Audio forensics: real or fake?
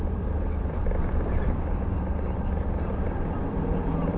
fake